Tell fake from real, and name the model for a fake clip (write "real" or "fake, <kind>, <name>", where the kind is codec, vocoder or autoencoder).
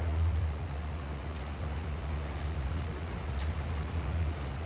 fake, vocoder, Vocos